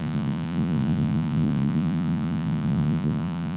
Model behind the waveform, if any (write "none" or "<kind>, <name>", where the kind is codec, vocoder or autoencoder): vocoder, Vocos